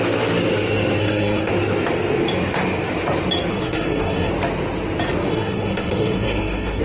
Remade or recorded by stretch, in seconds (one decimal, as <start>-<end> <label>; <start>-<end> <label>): 0.0-1.0 recorded; 1.0-1.5 remade; 1.5-3.5 recorded; 3.5-4.3 remade; 4.3-5.3 recorded; 5.3-6.8 remade